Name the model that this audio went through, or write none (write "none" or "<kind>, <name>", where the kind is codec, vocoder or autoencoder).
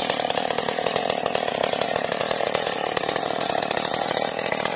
vocoder, BigVGAN v2